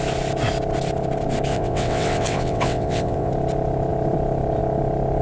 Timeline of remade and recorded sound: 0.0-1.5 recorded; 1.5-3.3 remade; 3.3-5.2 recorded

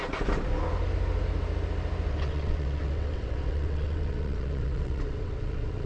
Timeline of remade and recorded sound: 0.0-2.1 recorded; 2.1-5.9 remade

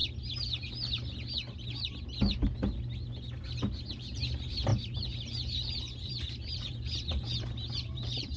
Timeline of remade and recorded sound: 0.0-3.9 recorded; 3.9-8.4 remade

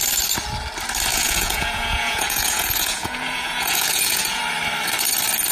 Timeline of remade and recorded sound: 0.0-1.1 recorded; 1.1-4.4 remade; 4.4-5.5 recorded

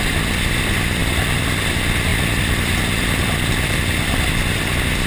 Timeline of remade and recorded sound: 0.0-1.0 recorded; 1.0-1.7 remade; 1.7-2.1 recorded; 2.1-4.3 remade; 4.3-5.1 recorded

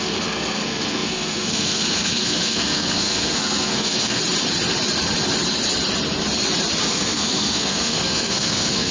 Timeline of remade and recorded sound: 0.0-4.2 remade; 4.2-6.8 recorded; 6.8-8.9 remade